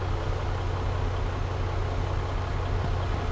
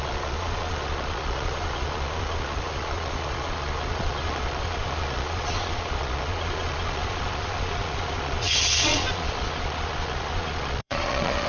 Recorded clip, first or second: first